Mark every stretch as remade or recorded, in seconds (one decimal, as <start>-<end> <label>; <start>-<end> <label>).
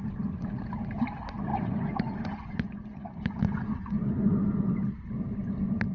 0.0-1.5 recorded; 1.5-4.7 remade; 4.7-5.9 recorded